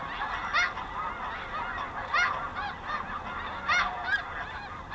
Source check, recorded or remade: recorded